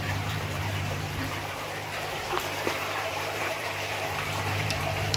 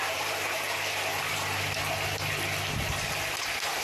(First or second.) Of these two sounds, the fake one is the first